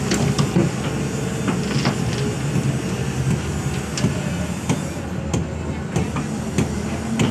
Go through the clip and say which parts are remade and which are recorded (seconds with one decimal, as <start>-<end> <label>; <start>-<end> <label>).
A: 0.0-7.3 recorded